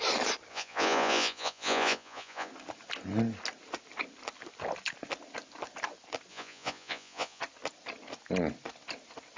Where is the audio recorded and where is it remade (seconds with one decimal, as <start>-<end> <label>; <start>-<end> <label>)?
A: 0.0-0.5 recorded; 0.5-2.5 remade; 2.5-6.3 recorded; 6.3-7.4 remade; 7.4-9.4 recorded